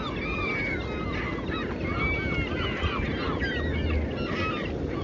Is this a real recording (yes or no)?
yes